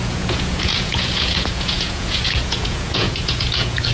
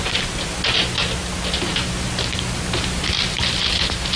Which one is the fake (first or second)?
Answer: first